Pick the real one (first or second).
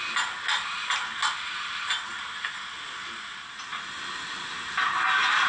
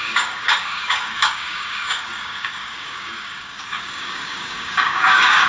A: first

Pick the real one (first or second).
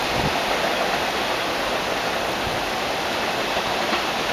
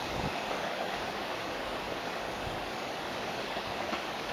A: first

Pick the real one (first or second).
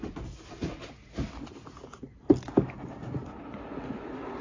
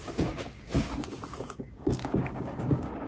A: first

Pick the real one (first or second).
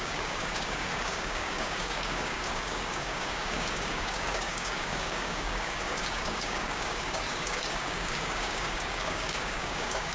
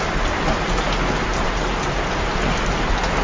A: second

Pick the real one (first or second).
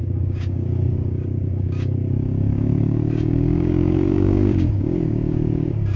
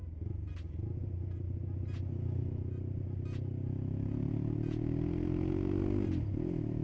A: second